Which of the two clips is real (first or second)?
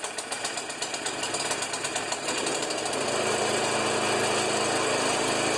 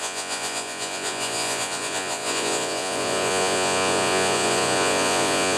first